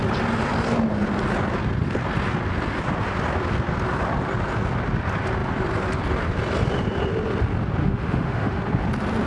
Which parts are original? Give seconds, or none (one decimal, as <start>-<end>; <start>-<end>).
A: 0.0-7.8; 8.6-9.3